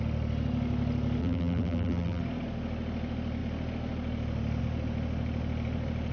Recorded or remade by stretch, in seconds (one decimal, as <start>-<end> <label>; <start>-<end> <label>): 0.0-1.2 recorded; 1.2-2.2 remade; 2.2-6.1 recorded